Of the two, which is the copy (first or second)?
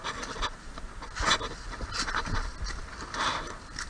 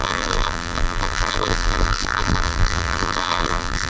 second